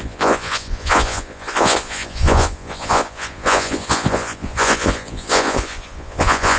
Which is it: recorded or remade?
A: remade